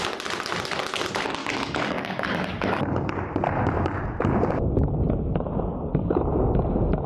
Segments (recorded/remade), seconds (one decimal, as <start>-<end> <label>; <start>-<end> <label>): 0.0-1.4 recorded; 1.4-3.1 remade; 3.1-5.7 recorded; 5.7-6.3 remade; 6.3-7.1 recorded